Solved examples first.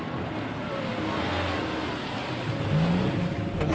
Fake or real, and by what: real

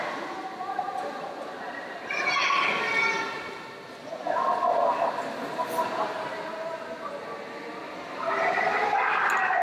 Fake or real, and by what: real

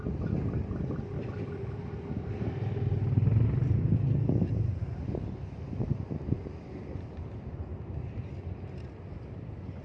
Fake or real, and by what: real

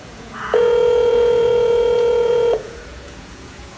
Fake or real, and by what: fake, vocoder, Vocos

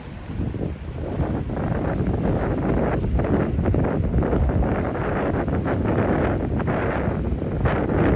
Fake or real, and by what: real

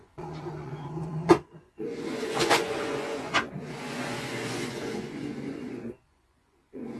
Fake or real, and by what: fake, vocoder, Vocos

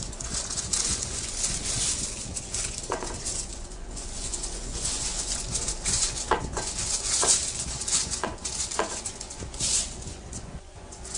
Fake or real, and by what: fake, vocoder, Vocos